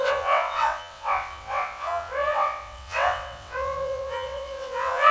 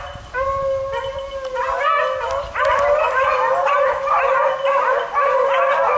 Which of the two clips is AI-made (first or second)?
first